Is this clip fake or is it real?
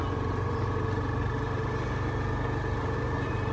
real